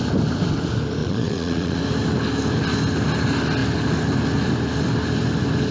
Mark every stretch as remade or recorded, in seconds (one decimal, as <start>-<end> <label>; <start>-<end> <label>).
0.0-1.0 recorded; 1.0-1.8 remade; 1.8-5.7 recorded